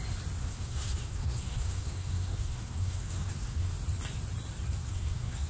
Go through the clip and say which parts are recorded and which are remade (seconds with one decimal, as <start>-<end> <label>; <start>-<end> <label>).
0.0-0.4 recorded; 0.4-3.7 remade; 3.7-4.8 recorded; 4.8-5.5 remade